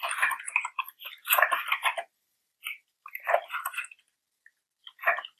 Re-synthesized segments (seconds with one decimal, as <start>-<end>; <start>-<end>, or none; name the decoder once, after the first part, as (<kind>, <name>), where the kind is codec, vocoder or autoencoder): 1.3-3.8 (vocoder, BigVGAN v2)